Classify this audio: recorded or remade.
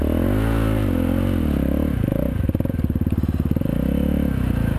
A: recorded